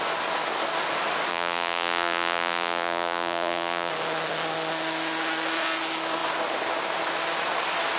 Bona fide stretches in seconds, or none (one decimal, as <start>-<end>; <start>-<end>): 0.0-1.3; 3.9-8.0